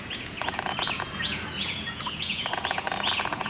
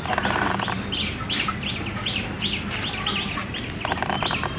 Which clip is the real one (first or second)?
second